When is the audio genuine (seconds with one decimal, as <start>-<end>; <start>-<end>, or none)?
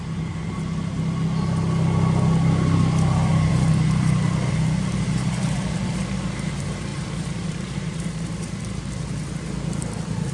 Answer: 0.0-3.5; 4.5-6.9; 8.2-10.3